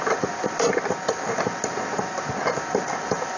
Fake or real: real